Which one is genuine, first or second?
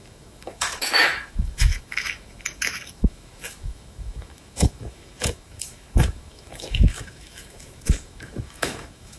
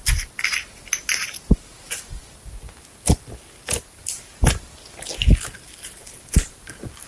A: second